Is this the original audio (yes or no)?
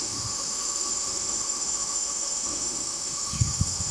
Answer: no